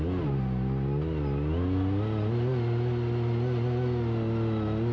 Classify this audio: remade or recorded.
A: recorded